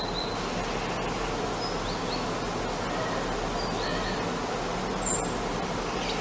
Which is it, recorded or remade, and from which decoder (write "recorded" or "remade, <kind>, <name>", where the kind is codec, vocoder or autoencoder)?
recorded